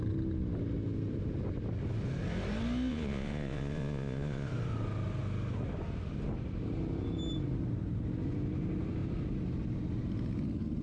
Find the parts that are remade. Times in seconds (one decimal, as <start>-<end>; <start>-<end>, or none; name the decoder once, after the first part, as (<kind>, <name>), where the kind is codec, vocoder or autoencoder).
2.9-4.5 (vocoder, Vocos)